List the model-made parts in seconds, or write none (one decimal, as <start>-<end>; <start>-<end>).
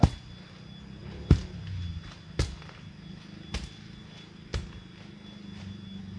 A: none